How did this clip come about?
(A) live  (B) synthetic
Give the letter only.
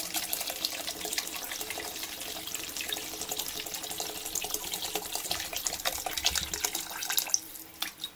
A